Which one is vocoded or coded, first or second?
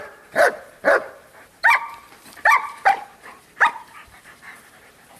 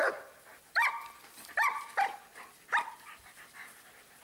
first